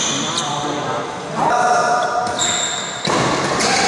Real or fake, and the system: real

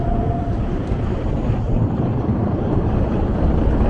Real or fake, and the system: fake, vocoder, BigVGAN v2